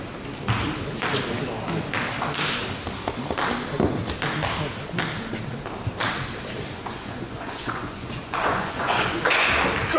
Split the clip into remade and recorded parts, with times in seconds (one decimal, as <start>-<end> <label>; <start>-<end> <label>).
0.0-6.8 recorded; 6.8-9.6 remade; 9.6-10.0 recorded